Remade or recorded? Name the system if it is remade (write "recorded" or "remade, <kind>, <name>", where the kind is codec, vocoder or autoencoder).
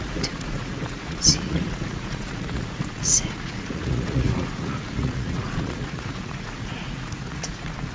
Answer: remade, vocoder, Vocos